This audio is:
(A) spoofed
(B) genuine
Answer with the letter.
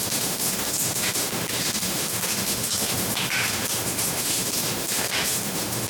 A